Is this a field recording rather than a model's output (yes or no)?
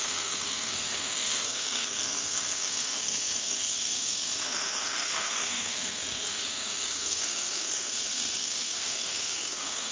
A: no